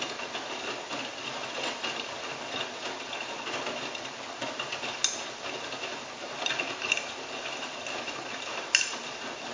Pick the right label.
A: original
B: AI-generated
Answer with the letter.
A